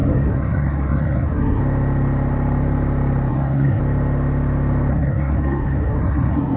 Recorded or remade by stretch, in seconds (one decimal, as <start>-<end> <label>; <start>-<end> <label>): 0.0-1.6 remade; 1.6-3.3 recorded; 3.3-3.8 remade; 3.8-4.9 recorded; 4.9-6.6 remade